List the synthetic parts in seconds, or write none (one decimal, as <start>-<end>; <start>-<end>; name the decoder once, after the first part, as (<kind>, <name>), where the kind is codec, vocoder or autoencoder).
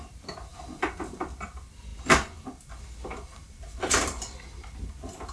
none